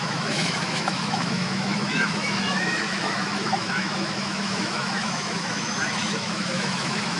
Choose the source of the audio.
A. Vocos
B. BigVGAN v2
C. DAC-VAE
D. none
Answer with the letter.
C